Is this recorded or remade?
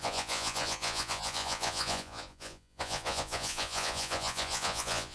remade